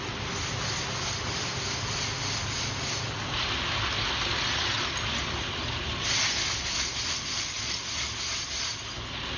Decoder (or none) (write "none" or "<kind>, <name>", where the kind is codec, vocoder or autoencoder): none